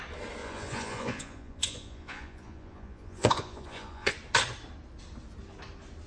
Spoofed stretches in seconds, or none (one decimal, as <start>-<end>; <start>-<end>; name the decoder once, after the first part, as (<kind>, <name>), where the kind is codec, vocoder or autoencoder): 0.4-4.1 (vocoder, Vocos)